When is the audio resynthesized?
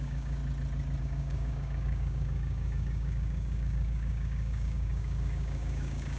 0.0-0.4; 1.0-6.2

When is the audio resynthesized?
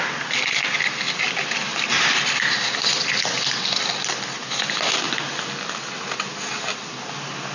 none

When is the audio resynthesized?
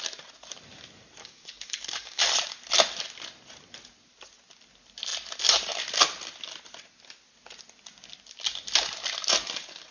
1.2-2.2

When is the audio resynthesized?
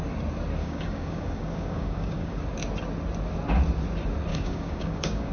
0.6-2.4; 4.3-5.3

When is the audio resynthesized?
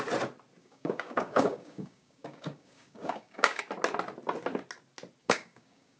0.6-3.6; 5.2-6.0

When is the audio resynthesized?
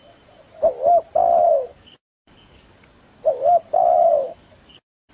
1.7-5.1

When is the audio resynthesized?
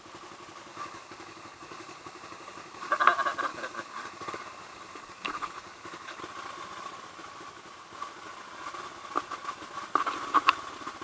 0.7-3.0; 3.5-6.2